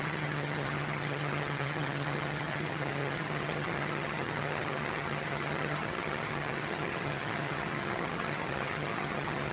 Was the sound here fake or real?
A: fake